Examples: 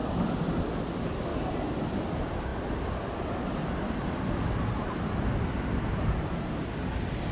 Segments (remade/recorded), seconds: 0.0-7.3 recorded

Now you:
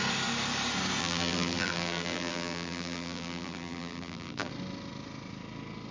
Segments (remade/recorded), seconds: 0.0-1.0 recorded; 1.0-4.5 remade; 4.5-5.9 recorded